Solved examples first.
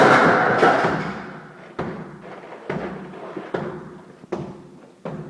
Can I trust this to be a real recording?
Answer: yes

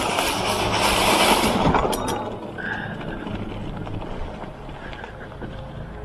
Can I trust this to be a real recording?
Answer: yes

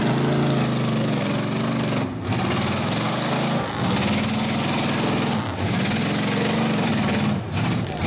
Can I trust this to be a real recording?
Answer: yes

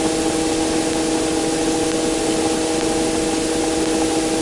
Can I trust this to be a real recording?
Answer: yes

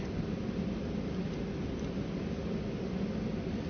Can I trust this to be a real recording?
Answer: yes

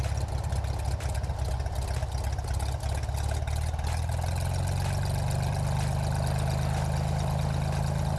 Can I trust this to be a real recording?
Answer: yes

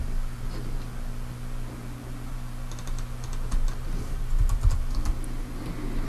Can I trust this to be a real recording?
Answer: yes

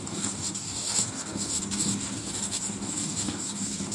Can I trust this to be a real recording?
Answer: no